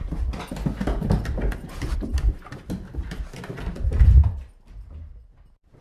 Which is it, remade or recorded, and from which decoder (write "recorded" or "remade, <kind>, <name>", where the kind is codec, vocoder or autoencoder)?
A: recorded